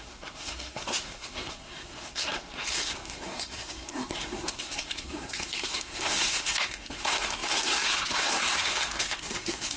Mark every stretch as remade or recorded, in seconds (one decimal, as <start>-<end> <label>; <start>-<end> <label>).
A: 0.0-9.8 remade